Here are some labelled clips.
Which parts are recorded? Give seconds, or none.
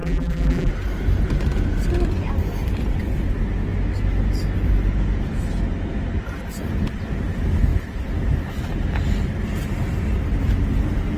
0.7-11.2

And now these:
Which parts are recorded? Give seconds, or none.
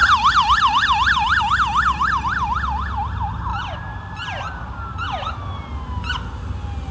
1.4-3.5; 4.0-6.9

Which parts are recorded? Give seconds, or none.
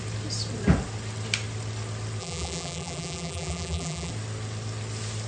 0.0-2.2; 4.1-5.3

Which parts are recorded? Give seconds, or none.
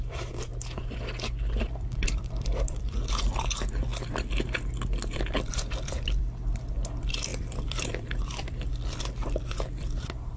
0.5-1.5; 3.9-5.1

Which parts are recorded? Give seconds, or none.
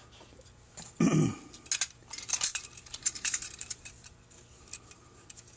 0.0-2.0; 4.2-5.6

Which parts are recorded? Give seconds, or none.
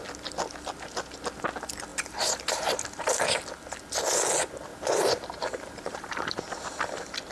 0.0-1.9; 3.5-4.7; 6.4-7.3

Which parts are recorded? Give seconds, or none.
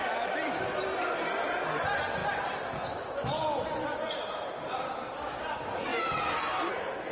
0.8-7.1